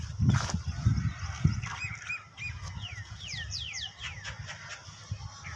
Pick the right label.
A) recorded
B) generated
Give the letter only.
A